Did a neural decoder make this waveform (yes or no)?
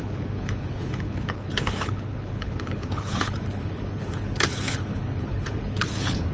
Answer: yes